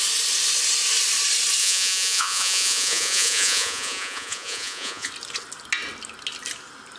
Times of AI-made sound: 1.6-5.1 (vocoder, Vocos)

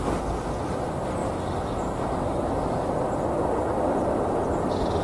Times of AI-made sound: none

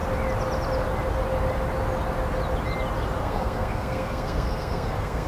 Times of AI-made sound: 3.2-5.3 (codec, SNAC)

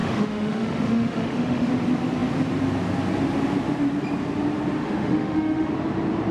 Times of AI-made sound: 0.0-1.7 (autoencoder, DAC-VAE); 4.8-5.7